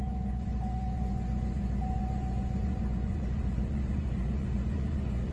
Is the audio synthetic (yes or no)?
yes